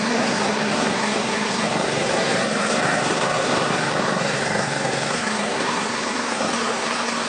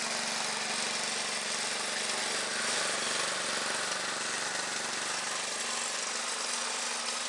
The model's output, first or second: first